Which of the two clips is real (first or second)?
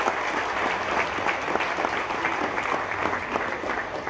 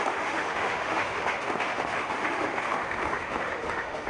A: first